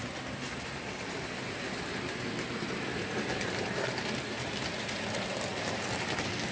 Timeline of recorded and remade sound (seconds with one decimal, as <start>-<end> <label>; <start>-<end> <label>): 0.0-6.5 recorded